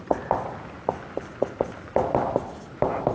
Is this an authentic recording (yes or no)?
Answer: yes